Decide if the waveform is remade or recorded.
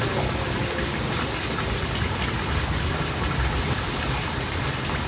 recorded